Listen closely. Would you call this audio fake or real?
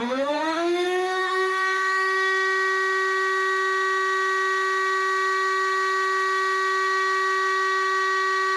fake